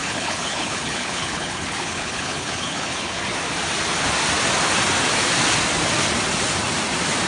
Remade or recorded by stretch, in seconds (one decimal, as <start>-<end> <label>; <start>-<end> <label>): 0.0-3.2 remade; 3.2-7.3 recorded